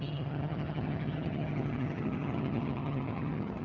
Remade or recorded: remade